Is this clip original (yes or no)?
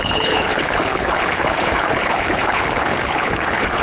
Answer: no